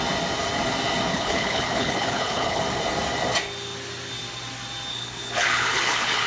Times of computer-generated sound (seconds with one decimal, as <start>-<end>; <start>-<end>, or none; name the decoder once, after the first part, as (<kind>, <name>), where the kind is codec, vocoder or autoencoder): 1.1-2.6 (codec, HILCodec); 4.9-6.3